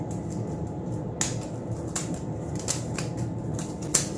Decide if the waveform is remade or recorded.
recorded